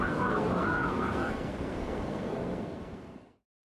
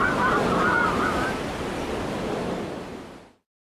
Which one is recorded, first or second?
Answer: second